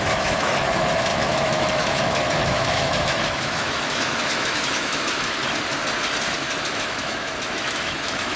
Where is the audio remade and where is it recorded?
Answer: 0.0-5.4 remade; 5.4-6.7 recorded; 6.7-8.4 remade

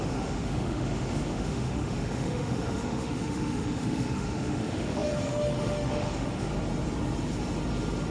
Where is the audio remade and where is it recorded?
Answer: 0.0-6.5 remade; 6.5-8.1 recorded